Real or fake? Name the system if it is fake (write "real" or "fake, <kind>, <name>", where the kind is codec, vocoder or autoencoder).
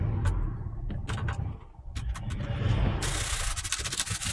real